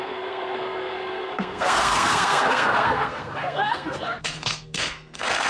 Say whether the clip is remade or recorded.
remade